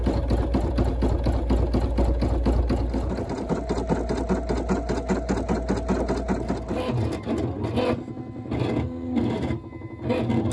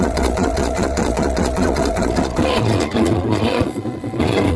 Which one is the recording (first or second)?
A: first